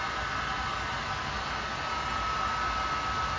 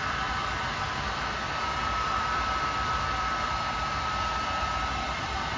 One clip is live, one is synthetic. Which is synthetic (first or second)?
second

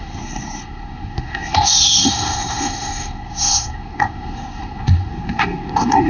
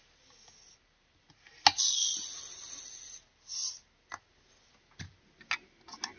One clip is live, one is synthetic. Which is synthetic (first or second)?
first